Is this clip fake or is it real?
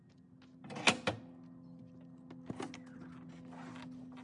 real